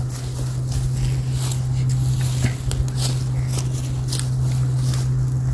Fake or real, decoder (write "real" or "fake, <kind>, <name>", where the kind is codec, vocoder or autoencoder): real